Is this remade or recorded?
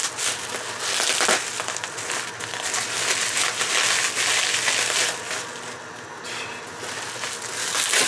recorded